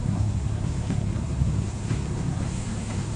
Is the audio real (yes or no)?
no